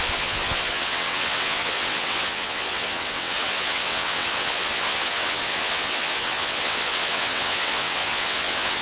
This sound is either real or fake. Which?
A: fake